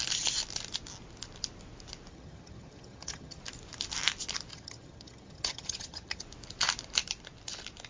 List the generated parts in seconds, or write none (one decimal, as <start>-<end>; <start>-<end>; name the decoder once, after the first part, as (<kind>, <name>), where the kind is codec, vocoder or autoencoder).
2.1-3.4 (vocoder, HiFi-GAN); 4.5-6.2